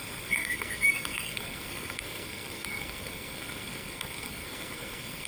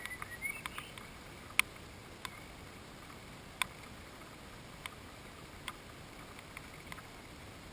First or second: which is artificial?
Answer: first